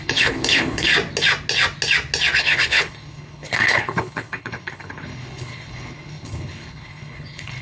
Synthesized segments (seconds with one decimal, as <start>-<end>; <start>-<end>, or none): 0.0-0.9; 2.4-7.6